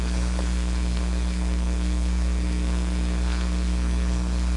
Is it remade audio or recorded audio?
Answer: remade